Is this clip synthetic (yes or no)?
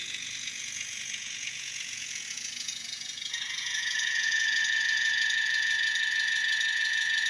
yes